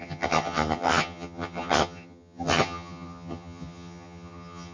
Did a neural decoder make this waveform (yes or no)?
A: yes